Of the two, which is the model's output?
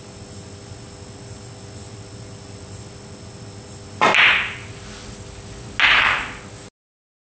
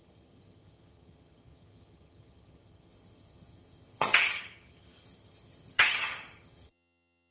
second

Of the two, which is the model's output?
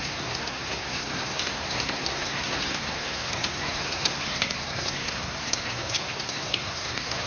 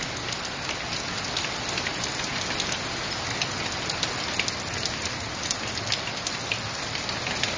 first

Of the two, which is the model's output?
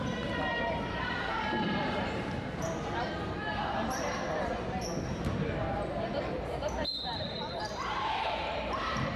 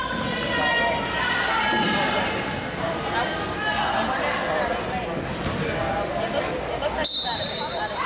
first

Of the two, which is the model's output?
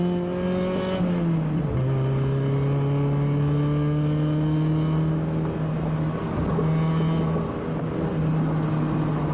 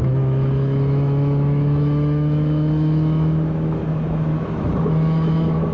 second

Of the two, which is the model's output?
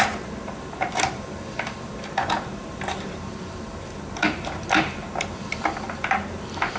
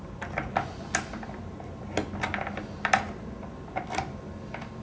first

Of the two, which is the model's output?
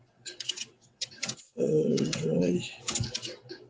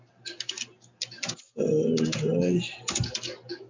first